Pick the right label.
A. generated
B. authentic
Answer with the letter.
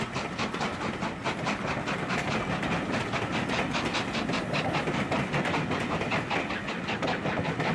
B